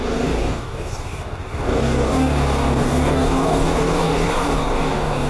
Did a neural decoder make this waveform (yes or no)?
yes